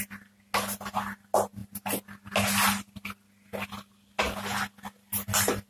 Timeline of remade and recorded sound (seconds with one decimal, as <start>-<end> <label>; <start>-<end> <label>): 0.0-5.7 recorded